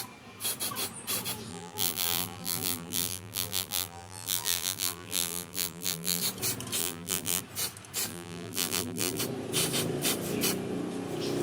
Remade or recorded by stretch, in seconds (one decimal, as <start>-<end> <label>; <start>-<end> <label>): 0.0-1.5 recorded; 1.5-6.2 remade; 6.2-6.8 recorded; 6.8-7.4 remade; 7.4-8.1 recorded; 8.1-9.2 remade; 9.2-11.4 recorded

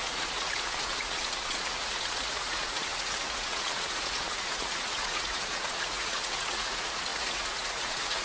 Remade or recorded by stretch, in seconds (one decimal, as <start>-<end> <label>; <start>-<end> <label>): 0.0-8.2 remade

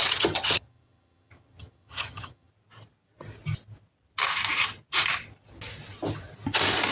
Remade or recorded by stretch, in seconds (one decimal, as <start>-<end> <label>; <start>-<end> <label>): 0.0-2.5 remade; 2.5-6.9 recorded

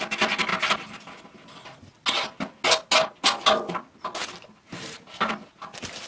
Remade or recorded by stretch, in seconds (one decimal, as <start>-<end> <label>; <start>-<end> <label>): 0.0-6.1 recorded

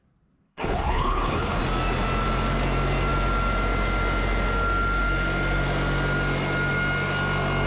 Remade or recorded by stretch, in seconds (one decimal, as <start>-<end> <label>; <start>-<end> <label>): 0.0-0.5 recorded; 0.5-1.6 remade; 1.6-7.7 recorded

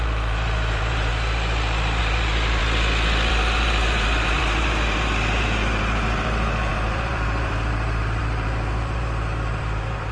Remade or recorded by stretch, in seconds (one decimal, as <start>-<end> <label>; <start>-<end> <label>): 0.0-1.1 remade; 1.1-2.0 recorded; 2.0-2.6 remade; 2.6-3.3 recorded; 3.3-10.1 remade

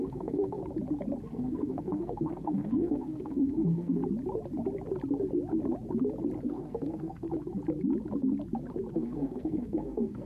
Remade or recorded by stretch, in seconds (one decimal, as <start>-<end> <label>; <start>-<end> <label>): 0.0-0.6 remade; 0.6-1.2 recorded; 1.2-4.0 remade; 4.0-6.4 recorded; 6.4-7.2 remade; 7.2-8.9 recorded; 8.9-10.3 remade